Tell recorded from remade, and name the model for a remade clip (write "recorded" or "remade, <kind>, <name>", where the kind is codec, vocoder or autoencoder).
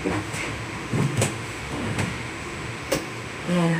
remade, autoencoder, DAC-VAE